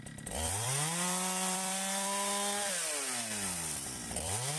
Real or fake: fake